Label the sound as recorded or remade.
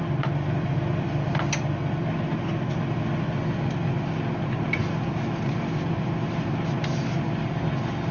recorded